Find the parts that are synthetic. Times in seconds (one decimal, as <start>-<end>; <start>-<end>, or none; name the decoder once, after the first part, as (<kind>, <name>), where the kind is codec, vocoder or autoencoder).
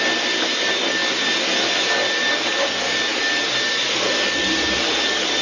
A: none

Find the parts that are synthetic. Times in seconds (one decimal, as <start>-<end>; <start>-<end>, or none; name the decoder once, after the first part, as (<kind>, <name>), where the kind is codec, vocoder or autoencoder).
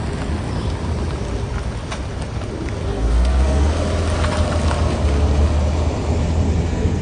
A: 2.8-3.7 (codec, SNAC); 6.5-7.0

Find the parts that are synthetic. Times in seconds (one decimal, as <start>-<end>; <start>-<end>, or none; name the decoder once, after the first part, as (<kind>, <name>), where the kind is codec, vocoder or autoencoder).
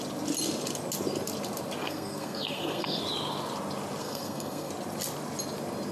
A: 1.8-3.0 (codec, SNAC); 4.0-4.7